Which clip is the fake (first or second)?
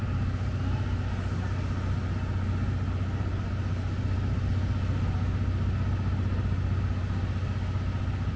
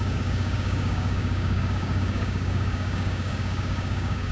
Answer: second